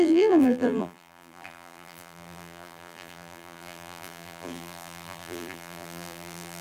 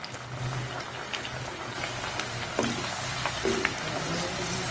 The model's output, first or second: first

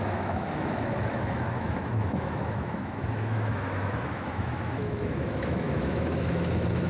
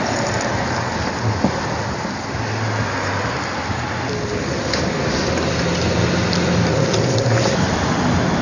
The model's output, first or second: first